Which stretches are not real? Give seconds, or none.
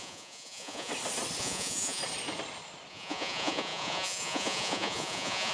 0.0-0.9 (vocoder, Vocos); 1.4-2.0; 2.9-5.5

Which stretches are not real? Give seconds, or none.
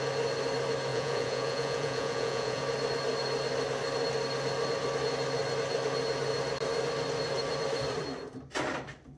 0.9-2.6 (vocoder, Vocos)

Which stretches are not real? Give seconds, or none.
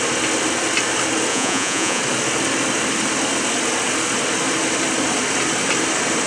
1.3-2.0 (vocoder, Vocos)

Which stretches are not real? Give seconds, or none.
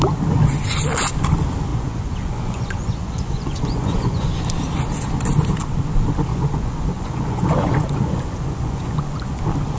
1.7-4.4 (vocoder, Vocos); 6.3-9.4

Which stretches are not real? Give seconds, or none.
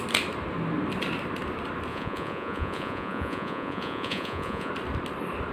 1.9-4.7 (vocoder, Vocos)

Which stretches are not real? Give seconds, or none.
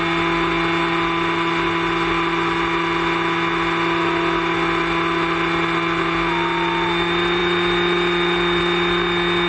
none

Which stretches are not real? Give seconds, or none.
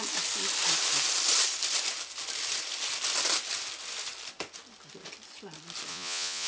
5.9-6.5 (vocoder, Vocos)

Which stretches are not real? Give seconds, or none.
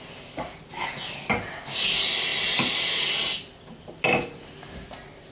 none